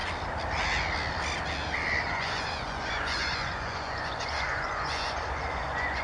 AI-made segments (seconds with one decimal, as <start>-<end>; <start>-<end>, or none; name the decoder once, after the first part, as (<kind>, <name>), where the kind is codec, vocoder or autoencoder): 2.1-6.0 (vocoder, Vocos)